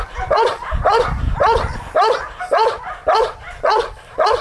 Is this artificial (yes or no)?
no